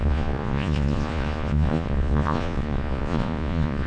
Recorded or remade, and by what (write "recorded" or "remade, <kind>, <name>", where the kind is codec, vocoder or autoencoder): remade, vocoder, Vocos